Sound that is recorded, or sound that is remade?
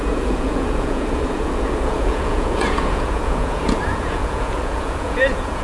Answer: remade